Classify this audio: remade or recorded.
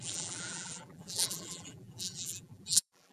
remade